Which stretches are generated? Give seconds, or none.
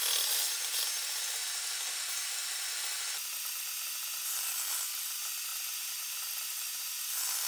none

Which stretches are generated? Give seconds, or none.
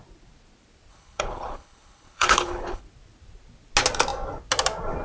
0.9-2.8 (codec, HILCodec)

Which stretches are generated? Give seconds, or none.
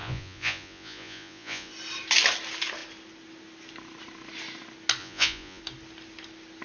0.0-1.7 (vocoder, Vocos); 5.0-5.6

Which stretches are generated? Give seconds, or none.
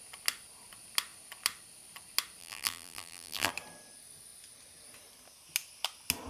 2.4-3.5 (vocoder, BigVGAN v2)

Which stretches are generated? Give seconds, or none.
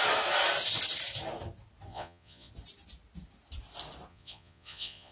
1.9-2.5 (vocoder, Vocos); 4.1-5.1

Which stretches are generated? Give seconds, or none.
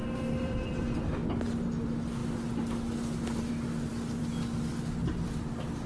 0.0-0.9 (vocoder, BigVGAN v2); 3.9-4.7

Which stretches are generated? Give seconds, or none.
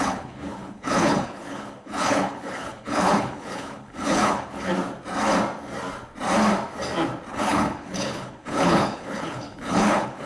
0.0-4.7 (codec, HILCodec); 7.3-10.3